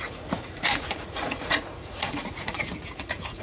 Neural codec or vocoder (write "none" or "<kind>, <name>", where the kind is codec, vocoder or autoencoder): vocoder, Vocos